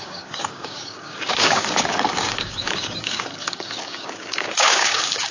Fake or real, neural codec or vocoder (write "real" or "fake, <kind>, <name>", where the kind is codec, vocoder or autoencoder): fake, codec, DAC